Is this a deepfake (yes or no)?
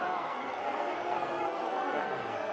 yes